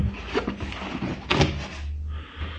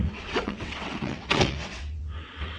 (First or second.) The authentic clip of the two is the first